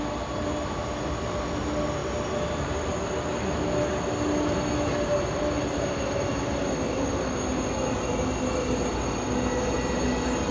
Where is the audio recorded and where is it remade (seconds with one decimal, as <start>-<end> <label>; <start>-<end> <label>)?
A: 0.0-10.5 recorded